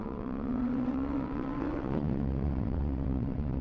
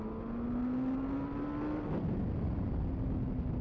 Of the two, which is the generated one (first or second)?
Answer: first